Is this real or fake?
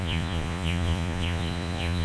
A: fake